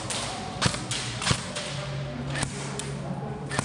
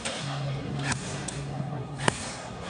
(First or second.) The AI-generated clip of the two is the second